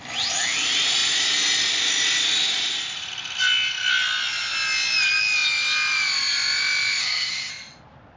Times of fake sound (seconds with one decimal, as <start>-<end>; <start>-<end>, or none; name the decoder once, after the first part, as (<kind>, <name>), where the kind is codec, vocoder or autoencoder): 7.0-7.5 (codec, SNAC)